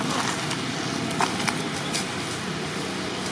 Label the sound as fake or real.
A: real